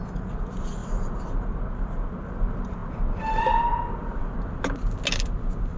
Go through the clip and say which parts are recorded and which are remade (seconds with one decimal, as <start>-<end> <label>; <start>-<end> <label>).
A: 0.0-5.8 recorded